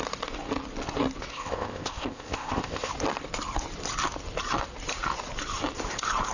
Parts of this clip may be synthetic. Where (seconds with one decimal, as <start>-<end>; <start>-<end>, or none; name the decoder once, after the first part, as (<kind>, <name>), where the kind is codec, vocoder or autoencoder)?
1.3-2.9 (codec, ZipCodec)